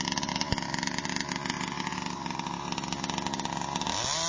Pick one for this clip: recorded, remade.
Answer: recorded